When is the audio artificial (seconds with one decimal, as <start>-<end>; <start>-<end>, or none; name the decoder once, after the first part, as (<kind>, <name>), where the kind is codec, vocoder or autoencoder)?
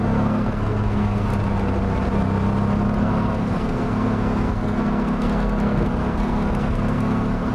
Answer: 0.0-1.3 (codec, SNAC); 3.0-7.5